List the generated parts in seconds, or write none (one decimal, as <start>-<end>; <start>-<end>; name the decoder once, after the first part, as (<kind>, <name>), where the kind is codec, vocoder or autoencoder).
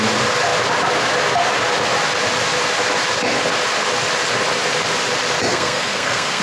5.5-6.4 (codec, SNAC)